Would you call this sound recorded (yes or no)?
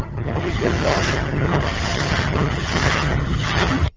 no